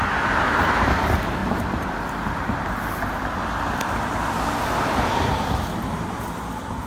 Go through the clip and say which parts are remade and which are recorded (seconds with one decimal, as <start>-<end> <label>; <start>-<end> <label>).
0.0-1.4 remade; 1.4-4.8 recorded; 4.8-5.3 remade; 5.3-6.9 recorded